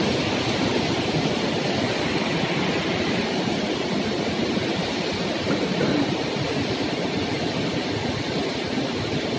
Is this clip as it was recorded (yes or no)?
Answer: yes